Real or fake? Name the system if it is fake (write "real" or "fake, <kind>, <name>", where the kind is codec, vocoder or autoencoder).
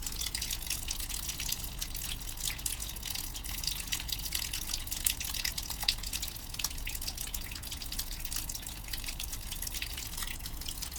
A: fake, vocoder, Vocos